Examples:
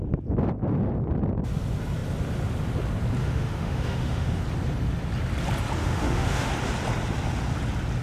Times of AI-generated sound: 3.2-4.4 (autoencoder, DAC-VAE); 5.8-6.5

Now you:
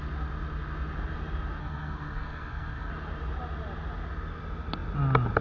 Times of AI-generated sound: 1.6-2.9 (codec, SNAC)

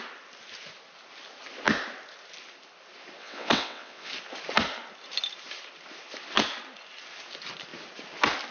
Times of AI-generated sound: 3.2-4.1 (vocoder, WaveNeXt)

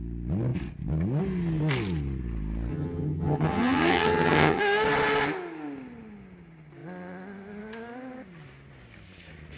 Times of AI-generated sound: 2.7-4.6 (vocoder, HiFi-GAN)